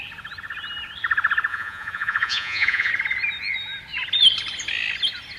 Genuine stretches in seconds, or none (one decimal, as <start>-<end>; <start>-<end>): 0.0-1.5; 2.9-5.4